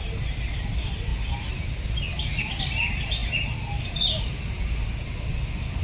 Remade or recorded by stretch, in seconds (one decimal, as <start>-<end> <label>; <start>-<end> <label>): 0.0-5.8 recorded